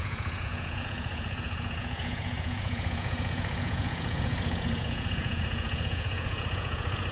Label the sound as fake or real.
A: fake